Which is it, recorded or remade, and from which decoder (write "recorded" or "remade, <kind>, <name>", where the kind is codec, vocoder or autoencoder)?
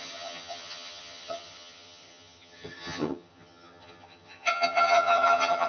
remade, vocoder, HiFi-GAN